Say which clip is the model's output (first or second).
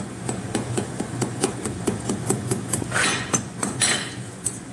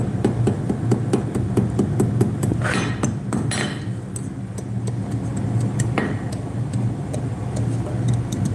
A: first